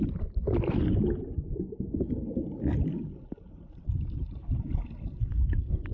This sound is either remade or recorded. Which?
recorded